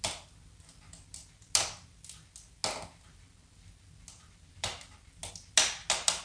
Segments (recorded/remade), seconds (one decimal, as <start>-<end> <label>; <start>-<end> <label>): 0.0-6.2 recorded